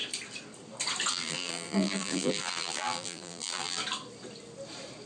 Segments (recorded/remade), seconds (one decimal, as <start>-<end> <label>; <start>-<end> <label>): 0.0-1.1 recorded; 1.1-3.8 remade; 3.8-5.1 recorded